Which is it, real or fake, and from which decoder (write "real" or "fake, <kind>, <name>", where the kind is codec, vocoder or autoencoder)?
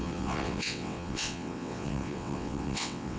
fake, vocoder, WaveNeXt